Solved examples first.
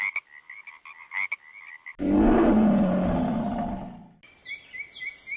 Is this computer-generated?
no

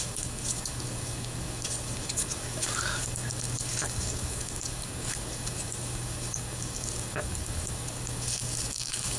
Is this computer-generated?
yes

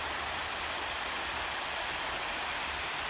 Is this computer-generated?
no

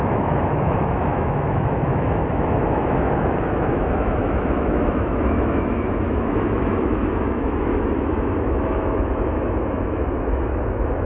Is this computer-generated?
yes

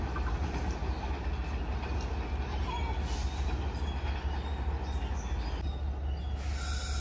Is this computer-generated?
no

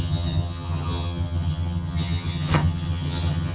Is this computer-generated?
yes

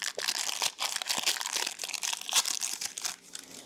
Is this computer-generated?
no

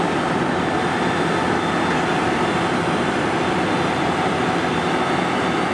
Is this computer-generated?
no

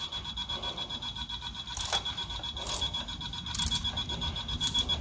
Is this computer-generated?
no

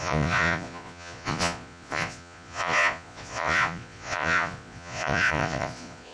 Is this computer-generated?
yes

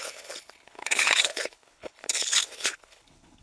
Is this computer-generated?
yes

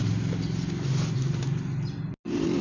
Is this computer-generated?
no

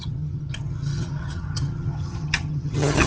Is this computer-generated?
yes